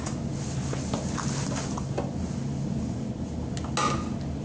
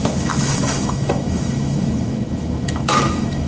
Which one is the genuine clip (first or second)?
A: first